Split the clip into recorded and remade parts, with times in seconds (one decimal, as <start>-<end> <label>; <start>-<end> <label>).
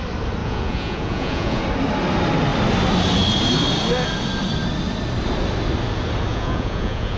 0.0-0.4 recorded; 0.4-1.6 remade; 1.6-6.3 recorded; 6.3-7.2 remade